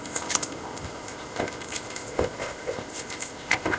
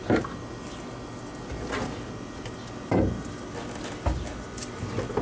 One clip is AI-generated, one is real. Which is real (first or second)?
second